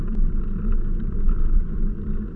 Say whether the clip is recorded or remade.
recorded